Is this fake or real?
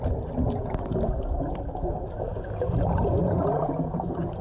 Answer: real